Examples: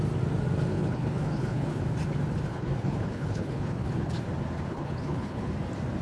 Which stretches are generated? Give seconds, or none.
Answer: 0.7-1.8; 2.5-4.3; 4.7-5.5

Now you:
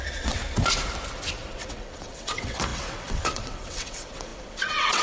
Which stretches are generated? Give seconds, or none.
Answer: 0.0-0.4; 1.5-5.0

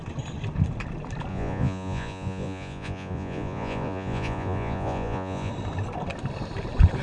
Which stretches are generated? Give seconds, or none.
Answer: 1.3-5.5

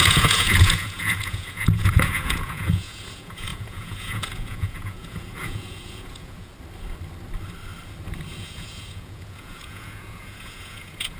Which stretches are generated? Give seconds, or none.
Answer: 0.0-6.5; 8.3-11.2

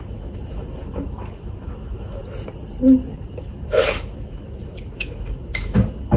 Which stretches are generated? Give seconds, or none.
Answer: 0.0-2.2; 3.4-6.2